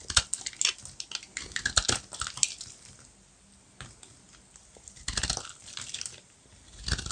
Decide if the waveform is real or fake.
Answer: real